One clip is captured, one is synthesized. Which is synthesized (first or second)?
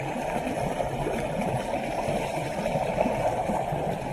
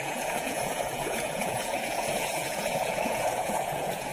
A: second